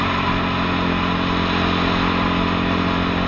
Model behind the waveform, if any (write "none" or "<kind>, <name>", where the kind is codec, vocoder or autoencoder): none